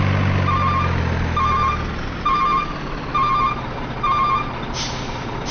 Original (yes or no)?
yes